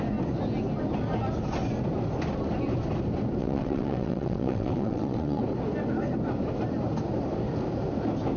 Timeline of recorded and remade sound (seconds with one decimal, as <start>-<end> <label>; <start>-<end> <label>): 0.0-3.4 recorded; 3.4-5.4 remade; 5.4-8.4 recorded